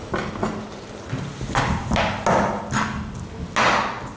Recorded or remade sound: recorded